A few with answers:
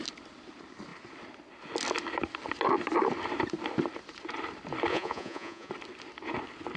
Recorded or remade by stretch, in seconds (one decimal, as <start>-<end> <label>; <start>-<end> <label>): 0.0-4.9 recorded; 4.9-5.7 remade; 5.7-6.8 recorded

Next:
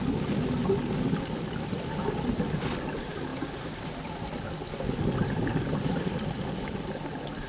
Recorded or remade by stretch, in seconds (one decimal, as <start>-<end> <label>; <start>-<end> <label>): 0.0-7.5 recorded

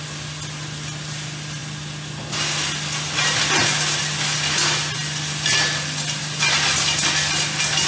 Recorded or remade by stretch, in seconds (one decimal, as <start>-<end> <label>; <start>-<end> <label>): 0.0-7.9 recorded